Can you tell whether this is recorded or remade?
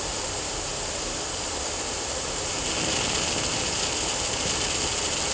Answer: recorded